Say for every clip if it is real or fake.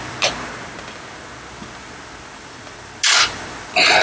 real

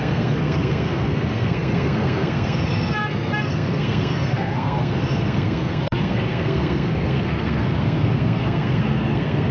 fake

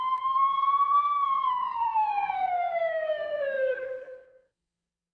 fake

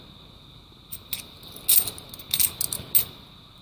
real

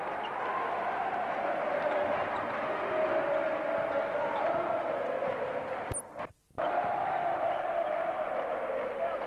real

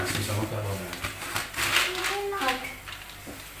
real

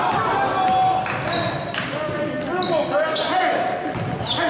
real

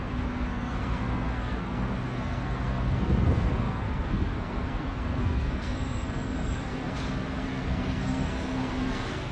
fake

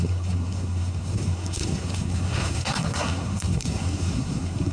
fake